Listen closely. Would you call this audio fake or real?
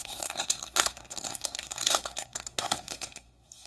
fake